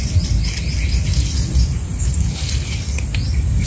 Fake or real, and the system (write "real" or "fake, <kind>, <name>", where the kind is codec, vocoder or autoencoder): real